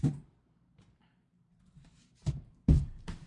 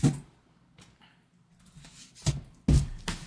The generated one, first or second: first